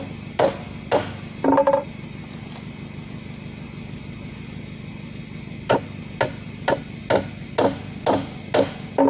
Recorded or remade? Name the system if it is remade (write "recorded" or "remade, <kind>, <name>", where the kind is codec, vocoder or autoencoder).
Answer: recorded